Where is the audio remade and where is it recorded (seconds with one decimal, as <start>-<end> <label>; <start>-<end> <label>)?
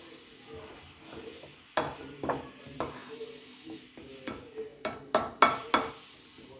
0.0-3.0 recorded; 3.0-3.8 remade; 3.8-6.6 recorded